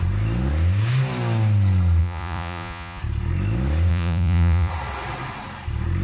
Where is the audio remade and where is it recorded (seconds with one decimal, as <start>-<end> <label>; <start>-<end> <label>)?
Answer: 0.0-2.0 recorded; 2.0-3.0 remade; 3.0-3.9 recorded; 3.9-4.7 remade; 4.7-6.0 recorded